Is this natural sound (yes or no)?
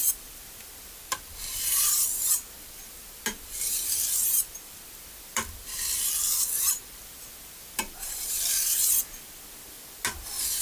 no